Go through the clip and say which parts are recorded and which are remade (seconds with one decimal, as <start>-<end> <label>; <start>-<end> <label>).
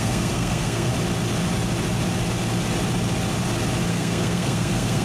0.0-0.9 remade; 0.9-3.9 recorded; 3.9-5.0 remade